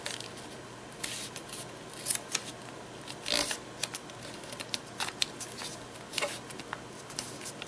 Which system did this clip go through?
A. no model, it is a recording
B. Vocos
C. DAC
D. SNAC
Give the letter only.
A